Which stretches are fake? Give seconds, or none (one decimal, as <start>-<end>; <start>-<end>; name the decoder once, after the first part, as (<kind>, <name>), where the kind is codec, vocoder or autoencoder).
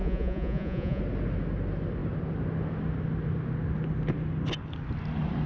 0.0-1.0 (vocoder, Vocos)